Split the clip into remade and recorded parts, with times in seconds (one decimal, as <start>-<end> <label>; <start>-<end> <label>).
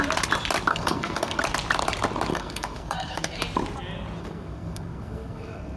0.0-0.7 recorded; 0.7-1.4 remade; 1.4-2.3 recorded; 2.3-3.4 remade; 3.4-4.2 recorded; 4.2-5.8 remade